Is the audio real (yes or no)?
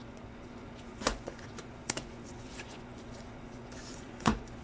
no